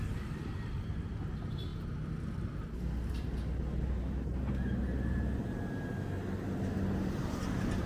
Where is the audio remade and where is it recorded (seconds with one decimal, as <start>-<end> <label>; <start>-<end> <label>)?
0.0-7.9 recorded